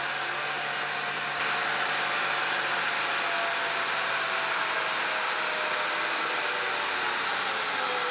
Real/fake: real